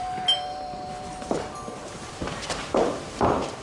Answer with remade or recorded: remade